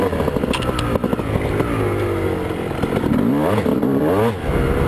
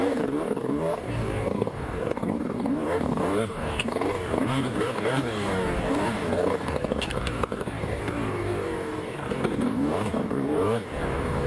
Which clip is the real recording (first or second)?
first